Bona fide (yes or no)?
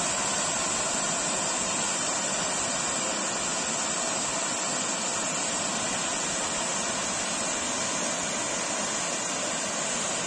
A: yes